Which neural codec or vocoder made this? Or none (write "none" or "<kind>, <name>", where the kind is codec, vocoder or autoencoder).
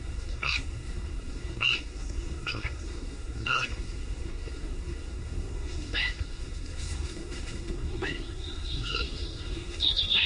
codec, SNAC